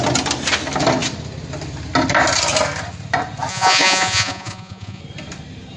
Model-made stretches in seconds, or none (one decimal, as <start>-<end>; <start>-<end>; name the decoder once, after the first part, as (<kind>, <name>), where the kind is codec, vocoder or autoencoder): 3.5-5.0 (vocoder, Vocos)